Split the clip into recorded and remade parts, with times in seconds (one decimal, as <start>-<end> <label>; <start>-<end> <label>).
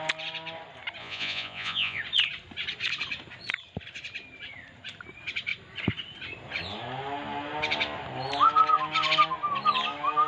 0.0-1.0 recorded; 1.0-2.0 remade; 2.0-10.3 recorded